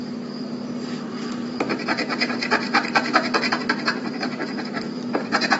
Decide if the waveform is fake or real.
fake